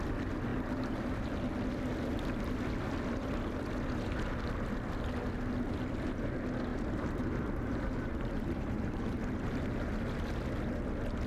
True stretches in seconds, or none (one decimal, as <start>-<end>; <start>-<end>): 0.0-0.5; 1.2-6.7; 9.2-11.3